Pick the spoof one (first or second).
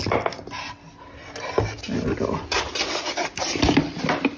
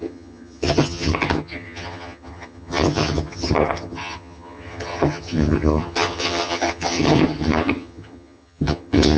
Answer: second